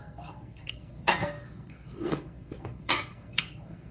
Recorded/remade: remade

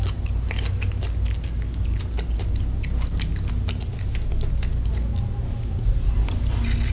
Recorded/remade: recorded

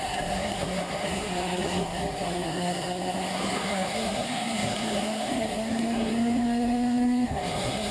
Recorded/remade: remade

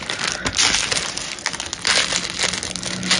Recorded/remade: recorded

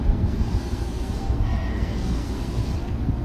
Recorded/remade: remade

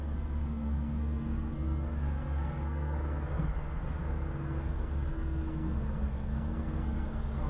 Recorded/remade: remade